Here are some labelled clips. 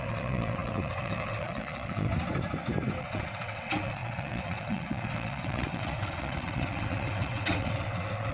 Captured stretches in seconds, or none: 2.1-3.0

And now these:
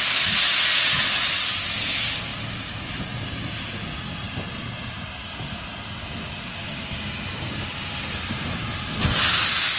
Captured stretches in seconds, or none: 0.0-9.8

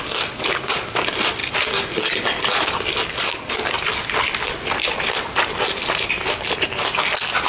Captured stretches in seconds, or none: 0.0-7.5

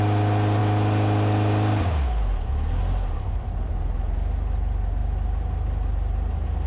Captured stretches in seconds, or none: 0.0-6.7

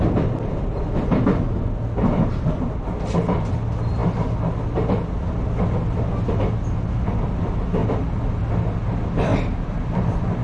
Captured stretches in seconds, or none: 0.0-10.4

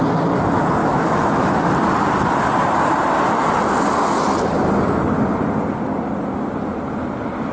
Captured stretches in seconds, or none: 0.0-0.8; 1.7-7.5

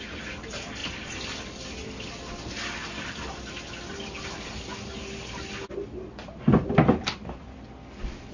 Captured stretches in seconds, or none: 0.0-8.3